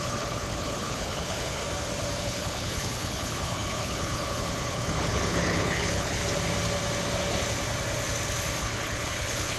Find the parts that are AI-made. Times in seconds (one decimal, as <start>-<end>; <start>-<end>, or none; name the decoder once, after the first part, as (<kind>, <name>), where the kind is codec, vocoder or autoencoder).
0.0-1.6 (codec, HILCodec); 2.2-6.2; 8.6-9.6

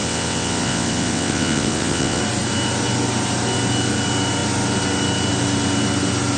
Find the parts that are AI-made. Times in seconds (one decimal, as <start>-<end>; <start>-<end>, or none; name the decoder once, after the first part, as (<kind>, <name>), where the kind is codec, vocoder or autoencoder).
0.0-2.2 (vocoder, WaveNeXt)